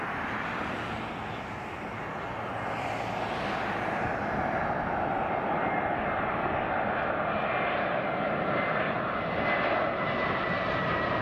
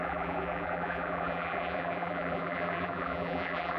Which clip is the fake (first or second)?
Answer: second